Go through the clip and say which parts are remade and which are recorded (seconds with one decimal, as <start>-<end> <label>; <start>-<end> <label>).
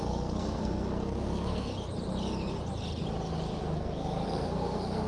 0.0-1.7 remade; 1.7-3.6 recorded; 3.6-5.1 remade